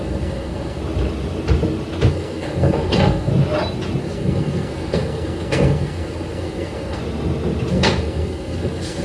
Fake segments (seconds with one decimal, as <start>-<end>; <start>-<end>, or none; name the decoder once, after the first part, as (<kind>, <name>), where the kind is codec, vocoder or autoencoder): 0.0-0.8 (codec, SNAC); 2.1-3.3; 4.0-7.0; 7.7-9.0